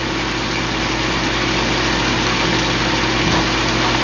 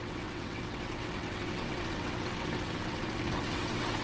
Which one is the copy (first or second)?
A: second